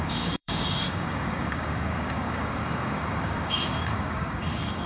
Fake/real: fake